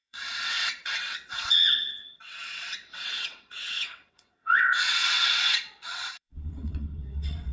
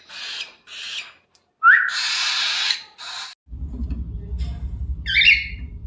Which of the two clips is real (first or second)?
second